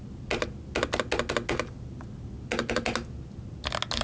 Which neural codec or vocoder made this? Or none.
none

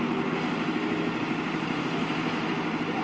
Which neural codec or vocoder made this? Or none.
none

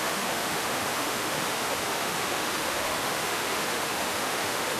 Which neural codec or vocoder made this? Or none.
autoencoder, DAC-VAE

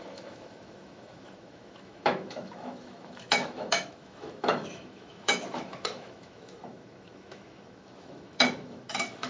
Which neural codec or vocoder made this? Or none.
autoencoder, DAC-VAE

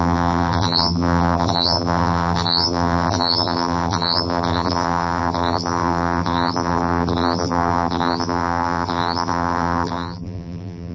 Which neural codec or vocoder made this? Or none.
vocoder, BigVGAN v2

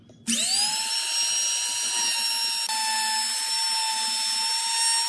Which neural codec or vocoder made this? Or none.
none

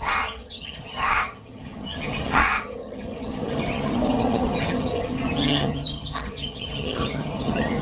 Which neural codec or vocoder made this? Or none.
vocoder, HiFi-GAN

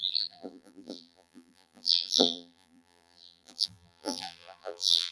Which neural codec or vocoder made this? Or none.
vocoder, BigVGAN v2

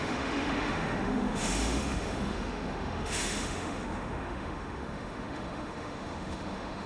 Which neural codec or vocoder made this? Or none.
autoencoder, DAC-VAE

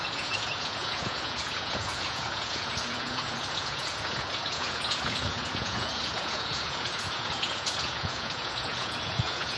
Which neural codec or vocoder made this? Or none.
vocoder, Vocos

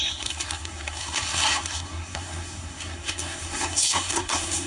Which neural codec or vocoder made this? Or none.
codec, SNAC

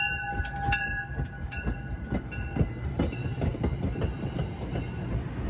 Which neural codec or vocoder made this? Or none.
none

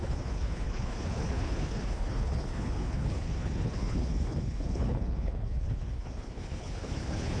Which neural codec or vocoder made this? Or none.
codec, HILCodec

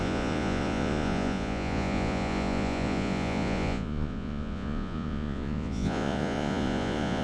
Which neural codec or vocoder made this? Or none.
vocoder, Vocos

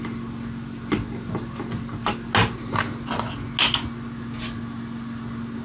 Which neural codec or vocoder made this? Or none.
none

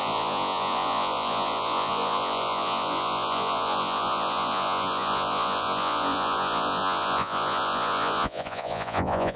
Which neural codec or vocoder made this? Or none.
vocoder, Vocos